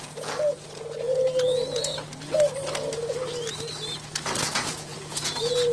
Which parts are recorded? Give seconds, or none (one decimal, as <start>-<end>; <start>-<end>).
1.9-4.4